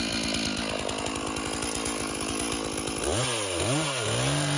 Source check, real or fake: real